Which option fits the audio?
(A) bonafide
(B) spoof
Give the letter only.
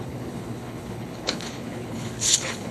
B